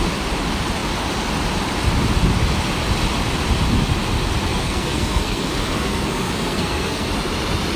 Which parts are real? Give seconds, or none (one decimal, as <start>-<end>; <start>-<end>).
0.0-4.5; 7.1-7.8